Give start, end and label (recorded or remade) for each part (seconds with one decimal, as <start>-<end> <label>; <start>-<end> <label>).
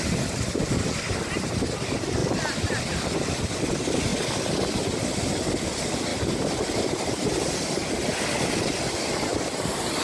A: 0.0-2.2 recorded; 2.2-2.8 remade; 2.8-4.1 recorded; 4.1-4.7 remade; 4.7-6.1 recorded; 6.1-6.8 remade; 6.8-9.3 recorded; 9.3-10.0 remade